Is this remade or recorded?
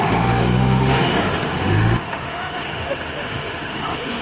remade